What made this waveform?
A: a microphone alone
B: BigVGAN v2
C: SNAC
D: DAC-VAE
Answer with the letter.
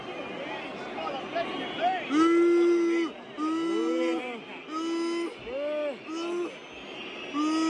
A